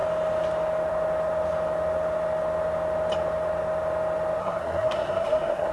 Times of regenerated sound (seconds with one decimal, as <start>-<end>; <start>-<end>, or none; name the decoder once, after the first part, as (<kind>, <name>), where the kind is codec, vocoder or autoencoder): 4.4-5.7 (codec, SNAC)